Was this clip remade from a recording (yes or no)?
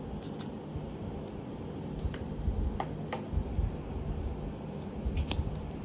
no